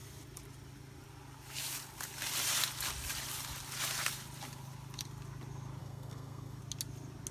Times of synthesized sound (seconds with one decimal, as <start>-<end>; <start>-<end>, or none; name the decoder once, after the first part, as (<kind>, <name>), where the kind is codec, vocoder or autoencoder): 5.8-6.6 (codec, SNAC)